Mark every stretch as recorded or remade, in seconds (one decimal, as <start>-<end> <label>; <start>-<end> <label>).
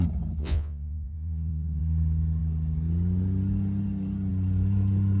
0.0-0.4 recorded; 0.4-1.8 remade; 1.8-5.2 recorded